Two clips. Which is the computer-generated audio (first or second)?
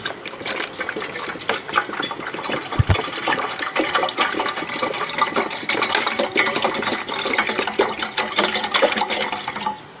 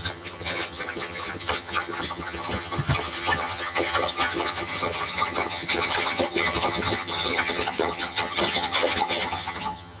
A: second